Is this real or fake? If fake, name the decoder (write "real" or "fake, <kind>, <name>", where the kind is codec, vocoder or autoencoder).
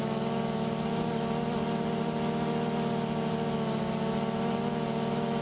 real